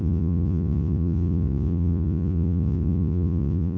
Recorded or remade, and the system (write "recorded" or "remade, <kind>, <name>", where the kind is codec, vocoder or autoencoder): remade, vocoder, Vocos